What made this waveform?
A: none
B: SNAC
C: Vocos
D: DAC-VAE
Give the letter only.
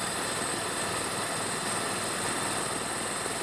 A